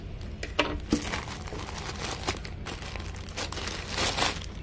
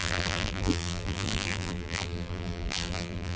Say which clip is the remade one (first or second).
second